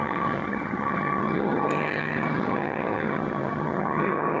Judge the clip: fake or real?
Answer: fake